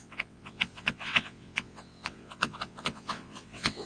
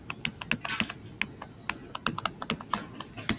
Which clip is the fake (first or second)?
first